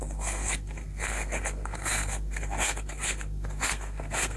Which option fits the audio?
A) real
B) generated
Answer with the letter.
B